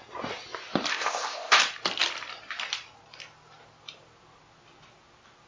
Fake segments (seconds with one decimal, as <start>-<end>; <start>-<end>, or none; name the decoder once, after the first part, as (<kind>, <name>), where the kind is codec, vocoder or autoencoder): 0.9-1.6 (codec, ZipCodec)